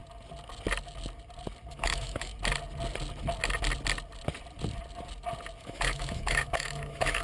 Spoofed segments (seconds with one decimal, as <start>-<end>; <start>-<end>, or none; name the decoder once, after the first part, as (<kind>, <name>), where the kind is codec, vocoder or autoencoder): 1.7-2.3 (autoencoder, DAC-VAE); 5.6-7.2